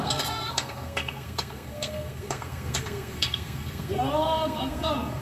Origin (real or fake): fake